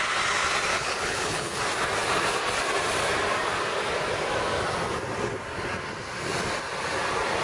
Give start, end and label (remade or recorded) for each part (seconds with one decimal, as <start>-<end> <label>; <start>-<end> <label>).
0.0-0.7 recorded; 0.7-1.6 remade; 1.6-7.4 recorded